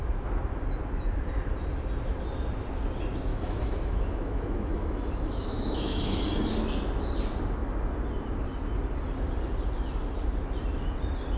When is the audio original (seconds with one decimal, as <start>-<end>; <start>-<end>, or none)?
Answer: 0.0-3.3; 6.2-11.4